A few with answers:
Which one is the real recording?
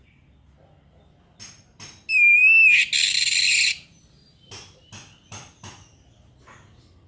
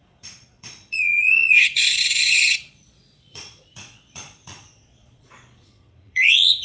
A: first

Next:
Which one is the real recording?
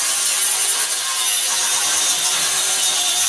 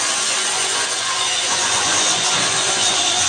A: first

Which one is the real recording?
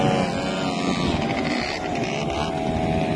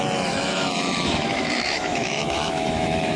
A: first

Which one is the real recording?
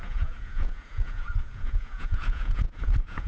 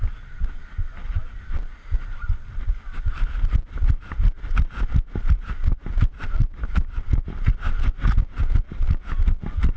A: second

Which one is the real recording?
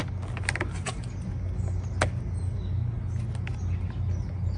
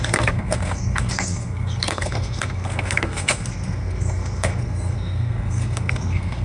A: first